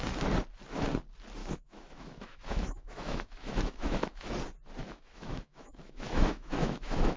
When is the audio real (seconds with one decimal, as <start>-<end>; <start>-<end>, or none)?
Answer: 0.0-1.4; 4.3-4.8